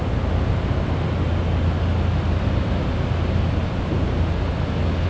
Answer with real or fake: real